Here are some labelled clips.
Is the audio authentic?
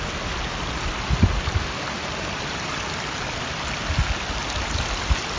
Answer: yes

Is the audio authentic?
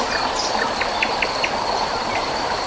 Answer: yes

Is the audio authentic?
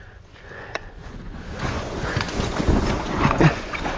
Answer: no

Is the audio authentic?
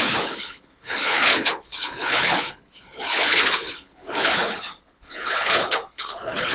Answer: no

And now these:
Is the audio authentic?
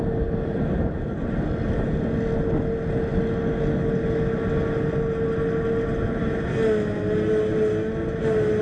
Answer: yes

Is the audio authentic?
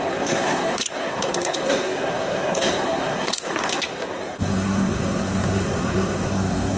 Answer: no